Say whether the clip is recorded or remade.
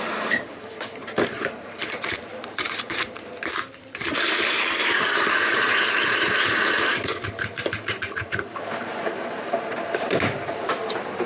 remade